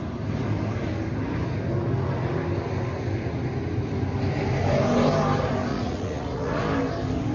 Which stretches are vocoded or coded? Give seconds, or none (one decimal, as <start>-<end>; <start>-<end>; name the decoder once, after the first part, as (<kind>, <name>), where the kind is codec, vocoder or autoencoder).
5.7-6.6 (vocoder, Vocos)